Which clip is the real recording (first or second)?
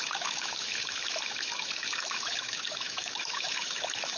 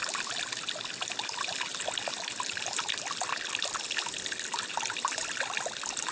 second